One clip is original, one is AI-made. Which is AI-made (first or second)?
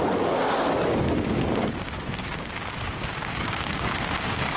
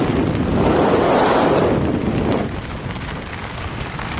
first